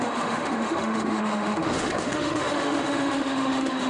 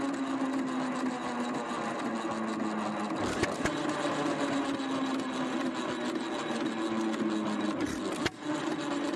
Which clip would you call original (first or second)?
second